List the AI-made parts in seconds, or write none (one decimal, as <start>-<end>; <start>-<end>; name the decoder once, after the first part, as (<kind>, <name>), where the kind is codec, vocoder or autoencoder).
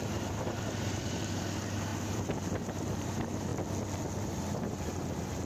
0.0-3.5 (vocoder, BigVGAN v2); 4.2-5.5